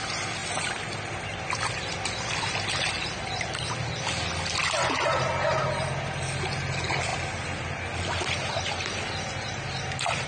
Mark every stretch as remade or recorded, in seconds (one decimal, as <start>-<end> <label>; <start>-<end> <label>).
0.0-10.3 recorded